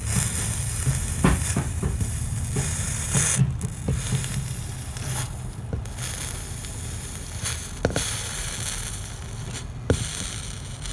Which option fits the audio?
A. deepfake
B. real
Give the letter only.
B